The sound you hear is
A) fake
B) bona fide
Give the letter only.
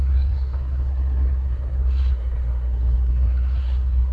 A